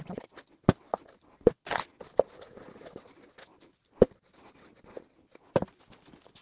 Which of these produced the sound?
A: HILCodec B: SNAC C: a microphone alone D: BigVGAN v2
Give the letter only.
C